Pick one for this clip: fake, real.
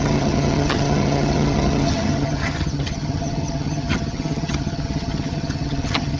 fake